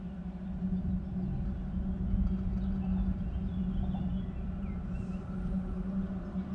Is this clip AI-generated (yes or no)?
no